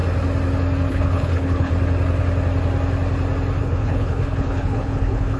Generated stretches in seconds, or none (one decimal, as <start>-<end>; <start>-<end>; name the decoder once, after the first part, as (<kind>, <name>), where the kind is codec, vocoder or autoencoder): 0.9-1.7 (codec, HILCodec); 3.6-5.4